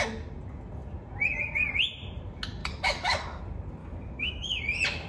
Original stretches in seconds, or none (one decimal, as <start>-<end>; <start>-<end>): 0.0-2.6; 3.4-3.8; 4.6-5.1